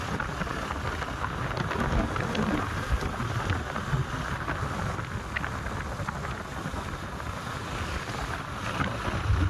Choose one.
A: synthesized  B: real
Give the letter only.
B